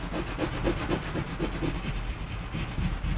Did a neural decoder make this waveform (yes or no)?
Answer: no